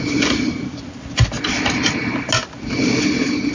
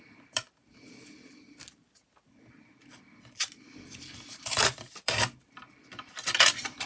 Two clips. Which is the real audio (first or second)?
first